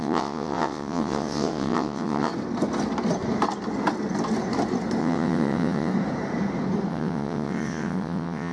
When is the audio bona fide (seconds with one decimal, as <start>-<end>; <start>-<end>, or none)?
2.3-5.0; 5.9-6.9